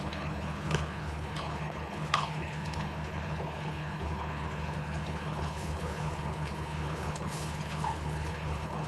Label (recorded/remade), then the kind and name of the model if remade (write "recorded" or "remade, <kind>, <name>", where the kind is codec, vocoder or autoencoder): remade, codec, HILCodec